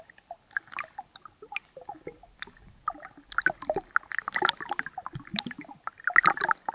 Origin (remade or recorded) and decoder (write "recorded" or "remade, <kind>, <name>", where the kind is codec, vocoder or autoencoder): recorded